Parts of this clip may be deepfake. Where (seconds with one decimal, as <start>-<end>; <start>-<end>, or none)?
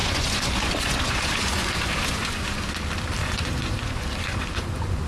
0.0-2.7; 3.2-5.1